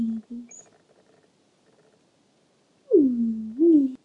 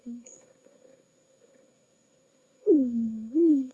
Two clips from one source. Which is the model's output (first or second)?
second